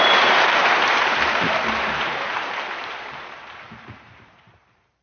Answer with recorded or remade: remade